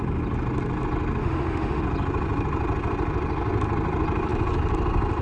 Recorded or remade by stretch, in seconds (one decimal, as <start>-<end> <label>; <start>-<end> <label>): 0.0-1.2 recorded; 1.2-1.8 remade; 1.8-5.2 recorded

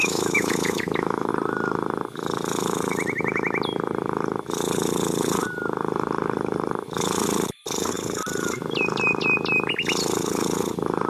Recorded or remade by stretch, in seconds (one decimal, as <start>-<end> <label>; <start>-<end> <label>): 0.0-1.3 remade; 1.3-11.1 recorded

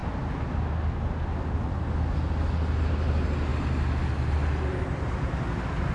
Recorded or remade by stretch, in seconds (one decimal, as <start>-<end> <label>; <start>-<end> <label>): 0.0-5.9 recorded

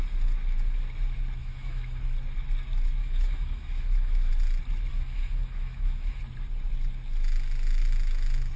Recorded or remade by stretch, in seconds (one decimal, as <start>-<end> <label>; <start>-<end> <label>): 0.0-1.4 recorded; 1.4-2.0 remade; 2.0-3.0 recorded; 3.0-4.3 remade; 4.3-4.9 recorded; 4.9-6.2 remade; 6.2-8.6 recorded

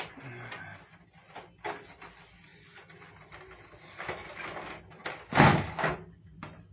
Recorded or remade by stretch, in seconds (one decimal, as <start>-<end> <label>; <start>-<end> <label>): 0.0-6.7 recorded

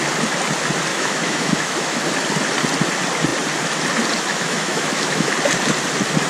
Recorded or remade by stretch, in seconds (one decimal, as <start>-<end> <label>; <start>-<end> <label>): 0.0-0.9 recorded; 0.9-2.0 remade; 2.0-4.3 recorded; 4.3-5.3 remade; 5.3-6.3 recorded

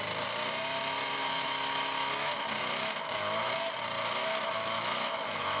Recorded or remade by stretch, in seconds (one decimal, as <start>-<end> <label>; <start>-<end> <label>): 0.0-1.2 recorded; 1.2-3.5 remade; 3.5-4.2 recorded; 4.2-5.6 remade

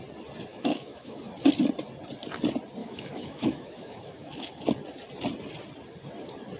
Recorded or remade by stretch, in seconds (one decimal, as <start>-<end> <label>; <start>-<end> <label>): 0.0-0.5 recorded; 0.5-1.2 remade; 1.2-2.8 recorded; 2.8-4.6 remade; 4.6-6.6 recorded